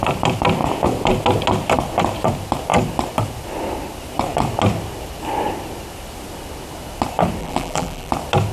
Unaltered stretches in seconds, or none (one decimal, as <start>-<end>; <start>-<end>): 0.0-7.4; 8.1-8.5